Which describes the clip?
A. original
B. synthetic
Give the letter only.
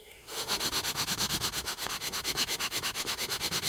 B